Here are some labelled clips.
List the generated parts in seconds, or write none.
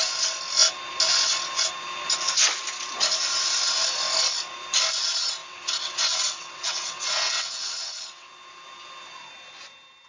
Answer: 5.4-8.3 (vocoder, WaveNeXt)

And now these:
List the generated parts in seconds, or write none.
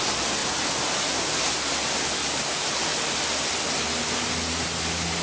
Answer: none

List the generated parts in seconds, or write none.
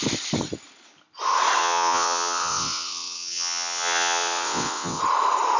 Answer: 1.6-5.0 (vocoder, WaveNeXt)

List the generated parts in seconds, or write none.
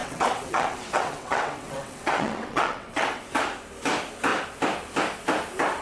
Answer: 0.0-3.2 (vocoder, WaveNeXt)